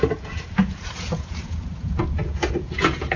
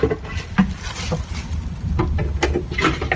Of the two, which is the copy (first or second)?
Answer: first